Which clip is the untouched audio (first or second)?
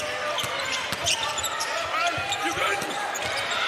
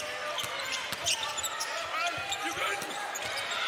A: second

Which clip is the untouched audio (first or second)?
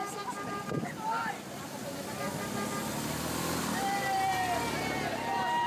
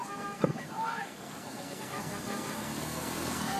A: first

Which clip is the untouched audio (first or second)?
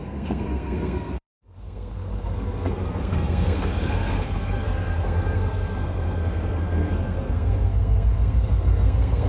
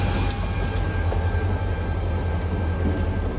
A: second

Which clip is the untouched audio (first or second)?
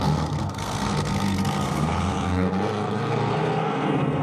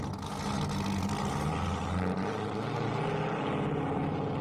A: second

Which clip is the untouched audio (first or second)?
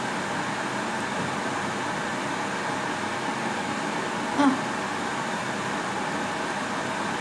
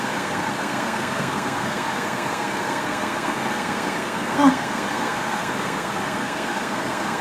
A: first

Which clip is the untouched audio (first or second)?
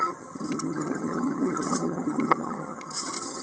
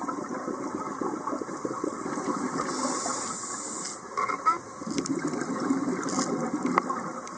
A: second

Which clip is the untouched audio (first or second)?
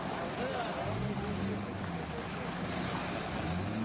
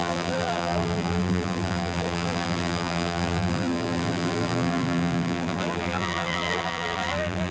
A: first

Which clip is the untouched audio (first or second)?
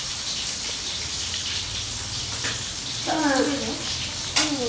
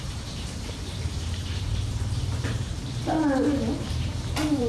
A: first